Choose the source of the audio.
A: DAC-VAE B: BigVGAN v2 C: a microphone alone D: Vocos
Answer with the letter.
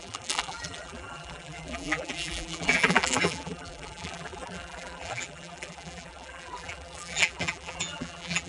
B